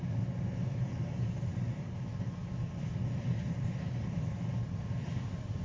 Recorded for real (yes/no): yes